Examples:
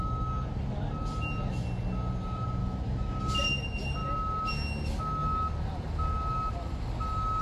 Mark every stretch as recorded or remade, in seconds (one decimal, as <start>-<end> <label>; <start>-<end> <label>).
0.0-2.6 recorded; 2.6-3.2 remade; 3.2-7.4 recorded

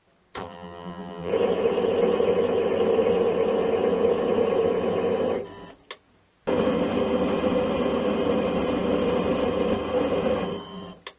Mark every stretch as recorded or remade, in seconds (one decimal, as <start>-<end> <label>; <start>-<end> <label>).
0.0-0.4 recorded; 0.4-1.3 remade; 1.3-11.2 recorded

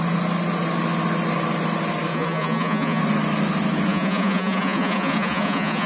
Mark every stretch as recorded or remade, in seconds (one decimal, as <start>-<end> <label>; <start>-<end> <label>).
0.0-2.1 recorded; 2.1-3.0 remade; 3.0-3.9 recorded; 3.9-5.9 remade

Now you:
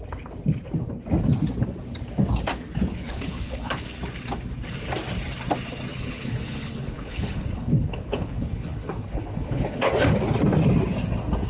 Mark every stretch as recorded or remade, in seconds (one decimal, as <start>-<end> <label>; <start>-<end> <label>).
0.0-2.9 recorded; 2.9-3.8 remade; 3.8-5.9 recorded; 5.9-9.9 remade; 9.9-11.5 recorded

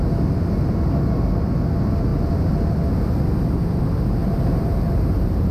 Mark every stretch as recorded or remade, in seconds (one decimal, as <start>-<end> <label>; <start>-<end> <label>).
0.0-4.2 recorded; 4.2-5.5 remade